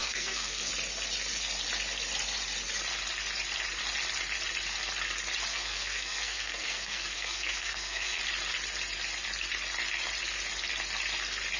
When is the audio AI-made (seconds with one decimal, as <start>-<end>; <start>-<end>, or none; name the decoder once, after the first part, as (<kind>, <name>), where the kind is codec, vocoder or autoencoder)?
0.0-0.7 (codec, SNAC); 5.5-8.2